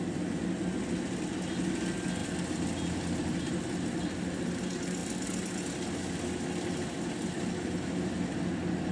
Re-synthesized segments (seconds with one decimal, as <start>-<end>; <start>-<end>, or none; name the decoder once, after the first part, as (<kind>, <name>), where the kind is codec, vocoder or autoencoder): none